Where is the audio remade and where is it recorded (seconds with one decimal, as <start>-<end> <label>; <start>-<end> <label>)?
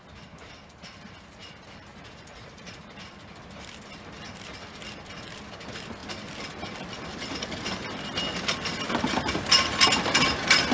0.0-1.9 recorded; 1.9-2.9 remade; 2.9-10.7 recorded